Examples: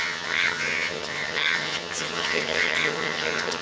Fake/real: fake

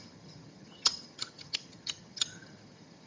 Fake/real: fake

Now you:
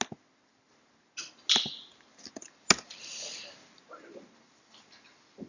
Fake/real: real